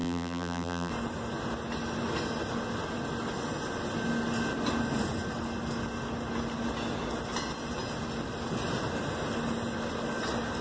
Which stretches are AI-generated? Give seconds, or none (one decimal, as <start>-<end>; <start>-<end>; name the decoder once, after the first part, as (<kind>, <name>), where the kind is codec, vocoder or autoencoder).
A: 0.0-0.9 (vocoder, BigVGAN v2)